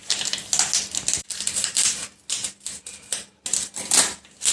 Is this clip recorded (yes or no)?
yes